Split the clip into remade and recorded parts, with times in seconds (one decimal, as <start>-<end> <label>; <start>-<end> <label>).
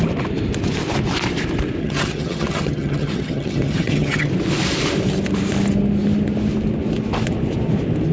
0.0-1.8 recorded; 1.8-4.3 remade; 4.3-8.1 recorded